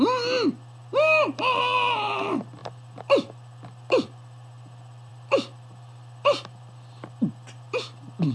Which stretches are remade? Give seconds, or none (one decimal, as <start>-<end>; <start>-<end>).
none